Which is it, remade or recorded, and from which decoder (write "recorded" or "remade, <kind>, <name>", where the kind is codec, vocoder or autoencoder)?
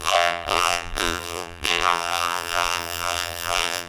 remade, vocoder, BigVGAN v2